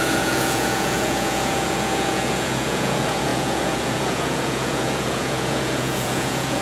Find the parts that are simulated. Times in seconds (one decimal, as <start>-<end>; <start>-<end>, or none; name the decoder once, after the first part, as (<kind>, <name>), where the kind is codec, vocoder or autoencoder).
0.0-6.6 (vocoder, Vocos)